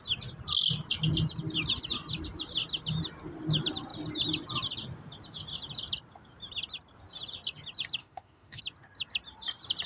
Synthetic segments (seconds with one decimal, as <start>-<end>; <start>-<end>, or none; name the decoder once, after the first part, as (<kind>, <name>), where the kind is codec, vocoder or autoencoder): 8.0-8.6 (autoencoder, DAC-VAE)